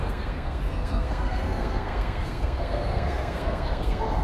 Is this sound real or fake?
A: fake